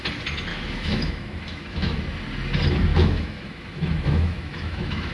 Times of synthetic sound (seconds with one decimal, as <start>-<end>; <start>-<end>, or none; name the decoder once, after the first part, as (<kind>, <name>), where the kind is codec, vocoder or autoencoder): 0.5-2.0 (autoencoder, DAC-VAE); 2.9-5.1